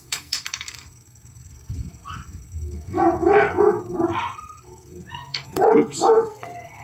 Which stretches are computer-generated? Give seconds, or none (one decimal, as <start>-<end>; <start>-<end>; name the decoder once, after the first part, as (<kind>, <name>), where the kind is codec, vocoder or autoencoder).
0.0-6.8 (codec, SNAC)